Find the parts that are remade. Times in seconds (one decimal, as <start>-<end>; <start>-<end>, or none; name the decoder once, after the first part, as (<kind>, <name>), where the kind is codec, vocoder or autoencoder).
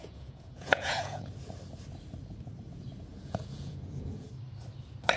0.0-1.3 (vocoder, Vocos); 3.1-4.3